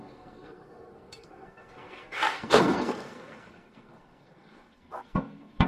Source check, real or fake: fake